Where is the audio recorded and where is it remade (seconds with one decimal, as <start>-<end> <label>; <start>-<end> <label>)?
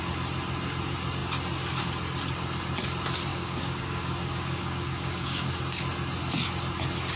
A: 0.0-3.3 recorded; 3.3-5.6 remade; 5.6-7.2 recorded